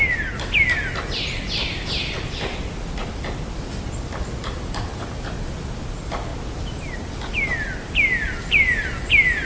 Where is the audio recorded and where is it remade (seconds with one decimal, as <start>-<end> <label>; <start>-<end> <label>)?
0.0-3.0 recorded; 3.0-3.6 remade; 3.6-4.4 recorded; 4.4-5.1 remade; 5.1-9.5 recorded